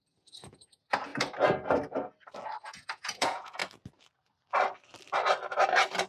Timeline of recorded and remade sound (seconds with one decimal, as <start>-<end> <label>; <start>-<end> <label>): 0.0-1.1 remade; 1.1-2.6 recorded; 2.6-3.6 remade; 3.6-6.1 recorded